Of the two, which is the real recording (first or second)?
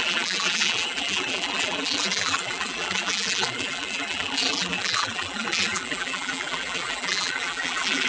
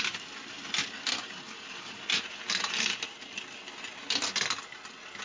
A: second